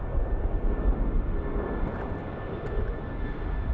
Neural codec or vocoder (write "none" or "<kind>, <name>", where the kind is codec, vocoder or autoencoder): none